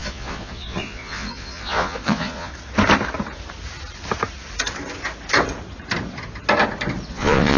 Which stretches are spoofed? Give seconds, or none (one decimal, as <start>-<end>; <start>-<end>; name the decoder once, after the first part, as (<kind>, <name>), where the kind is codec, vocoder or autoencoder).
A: 0.0-2.5 (vocoder, Vocos); 7.1-7.6